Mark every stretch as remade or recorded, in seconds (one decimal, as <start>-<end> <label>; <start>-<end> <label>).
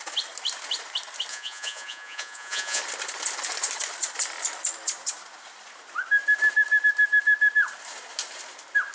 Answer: 0.0-1.3 recorded; 1.3-2.8 remade; 2.8-8.9 recorded